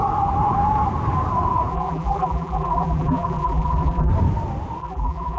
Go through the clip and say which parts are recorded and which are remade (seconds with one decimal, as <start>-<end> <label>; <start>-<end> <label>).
0.0-1.7 recorded; 1.7-4.1 remade; 4.1-4.8 recorded; 4.8-5.4 remade